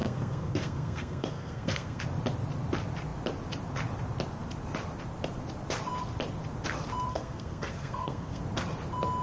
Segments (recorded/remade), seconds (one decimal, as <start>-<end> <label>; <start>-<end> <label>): 0.0-2.0 remade; 2.0-7.1 recorded; 7.1-8.4 remade; 8.4-9.2 recorded